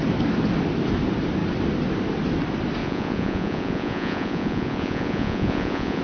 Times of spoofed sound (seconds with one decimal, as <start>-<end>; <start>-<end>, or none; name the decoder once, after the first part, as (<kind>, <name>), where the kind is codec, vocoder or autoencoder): 2.8-6.0 (vocoder, Vocos)